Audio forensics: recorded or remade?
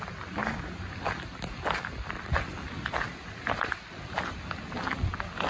recorded